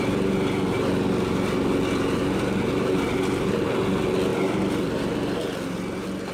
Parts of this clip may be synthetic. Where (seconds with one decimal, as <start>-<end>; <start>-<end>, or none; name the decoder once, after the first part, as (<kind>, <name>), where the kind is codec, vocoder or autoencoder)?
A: none